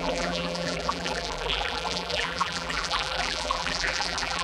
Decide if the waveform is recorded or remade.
remade